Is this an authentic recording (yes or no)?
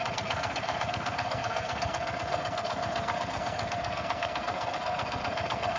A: no